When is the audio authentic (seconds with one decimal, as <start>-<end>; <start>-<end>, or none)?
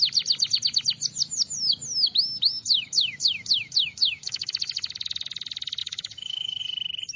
0.0-2.5; 4.5-5.8; 6.6-7.2